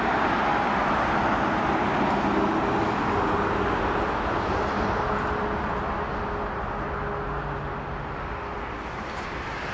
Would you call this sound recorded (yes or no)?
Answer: yes